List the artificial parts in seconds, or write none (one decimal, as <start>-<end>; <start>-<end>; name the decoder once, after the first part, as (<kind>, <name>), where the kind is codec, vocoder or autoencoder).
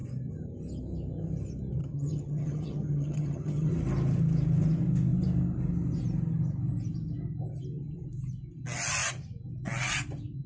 1.8-3.7 (vocoder, HiFi-GAN)